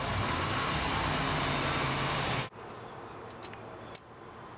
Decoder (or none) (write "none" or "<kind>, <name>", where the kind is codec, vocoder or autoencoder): none